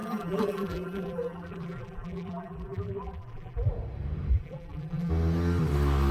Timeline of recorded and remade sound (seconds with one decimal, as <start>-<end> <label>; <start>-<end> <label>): 0.0-3.7 remade; 3.7-4.3 recorded; 4.3-5.1 remade; 5.1-6.1 recorded